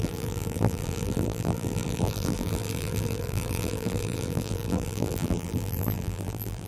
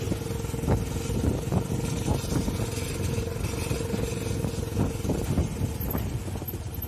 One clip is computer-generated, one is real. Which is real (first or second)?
second